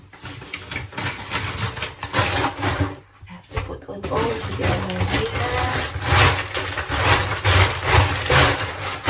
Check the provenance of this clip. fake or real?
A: real